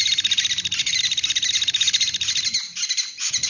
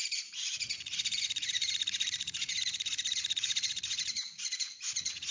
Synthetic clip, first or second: second